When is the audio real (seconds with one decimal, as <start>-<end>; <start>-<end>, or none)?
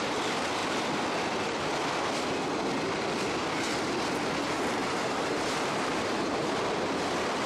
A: 0.0-4.8; 6.5-7.5